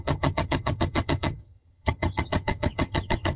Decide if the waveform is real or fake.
fake